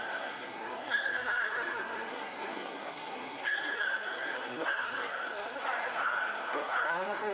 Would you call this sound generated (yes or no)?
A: yes